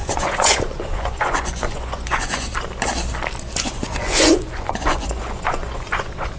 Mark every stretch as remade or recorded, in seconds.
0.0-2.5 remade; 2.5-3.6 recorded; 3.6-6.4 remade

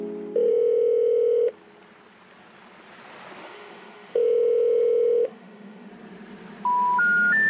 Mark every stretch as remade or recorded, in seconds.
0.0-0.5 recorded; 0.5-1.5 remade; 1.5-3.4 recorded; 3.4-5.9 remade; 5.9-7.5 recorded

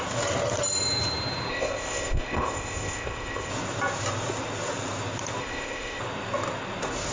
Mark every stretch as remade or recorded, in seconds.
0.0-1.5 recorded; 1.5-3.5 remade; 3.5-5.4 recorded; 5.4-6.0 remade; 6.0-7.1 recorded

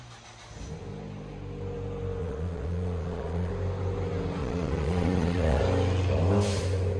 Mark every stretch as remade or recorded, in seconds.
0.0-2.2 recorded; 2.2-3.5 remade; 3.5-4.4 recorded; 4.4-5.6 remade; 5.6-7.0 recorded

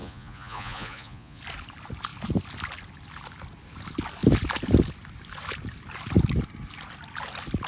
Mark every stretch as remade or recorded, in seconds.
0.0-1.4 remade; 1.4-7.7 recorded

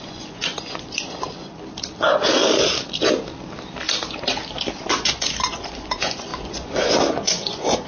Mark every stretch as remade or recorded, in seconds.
0.0-1.5 remade; 1.5-4.8 recorded; 4.8-7.9 remade

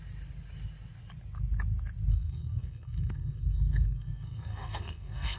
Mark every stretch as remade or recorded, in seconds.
0.0-2.1 recorded; 2.1-5.4 remade

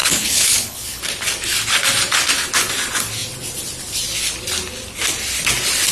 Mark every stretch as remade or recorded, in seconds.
0.0-1.0 remade; 1.0-5.9 recorded